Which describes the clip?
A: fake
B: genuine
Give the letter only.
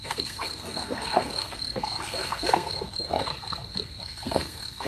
A